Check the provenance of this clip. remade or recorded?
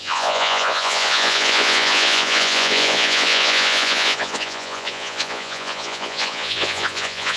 remade